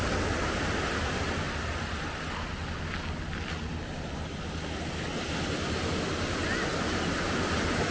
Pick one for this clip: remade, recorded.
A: recorded